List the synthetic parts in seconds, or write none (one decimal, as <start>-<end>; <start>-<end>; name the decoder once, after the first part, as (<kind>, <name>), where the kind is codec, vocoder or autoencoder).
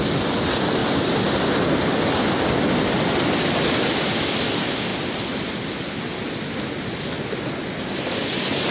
none